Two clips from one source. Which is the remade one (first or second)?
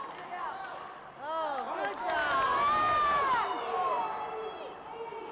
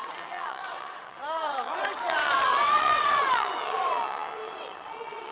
second